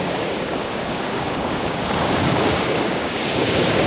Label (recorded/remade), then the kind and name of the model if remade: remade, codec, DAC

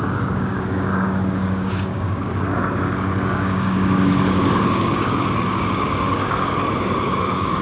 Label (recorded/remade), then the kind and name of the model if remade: remade, codec, DAC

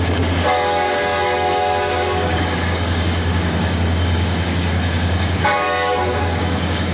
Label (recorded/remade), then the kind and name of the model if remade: remade, codec, DAC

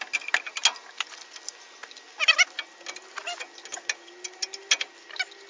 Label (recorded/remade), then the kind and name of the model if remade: recorded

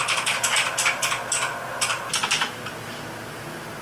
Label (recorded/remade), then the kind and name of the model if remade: recorded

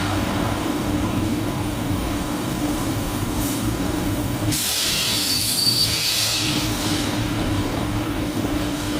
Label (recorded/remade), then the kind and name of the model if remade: remade, codec, DAC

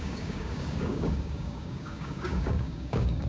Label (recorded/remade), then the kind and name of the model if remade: remade, codec, DAC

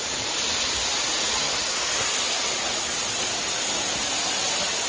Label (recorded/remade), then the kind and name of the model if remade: recorded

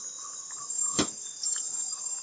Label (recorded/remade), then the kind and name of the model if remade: recorded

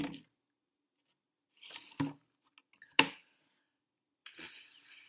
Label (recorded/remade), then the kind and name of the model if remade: recorded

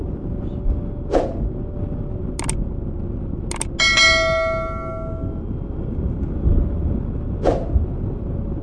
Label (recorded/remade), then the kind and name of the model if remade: recorded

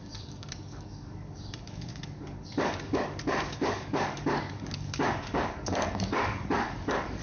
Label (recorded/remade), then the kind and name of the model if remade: remade, codec, DAC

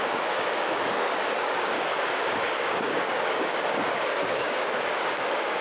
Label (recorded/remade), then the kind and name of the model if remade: remade, codec, DAC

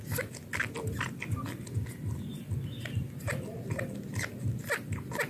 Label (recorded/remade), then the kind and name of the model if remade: recorded